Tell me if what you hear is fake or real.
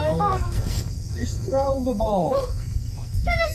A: fake